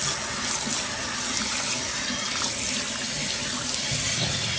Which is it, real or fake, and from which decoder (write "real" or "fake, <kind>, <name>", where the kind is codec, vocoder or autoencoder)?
real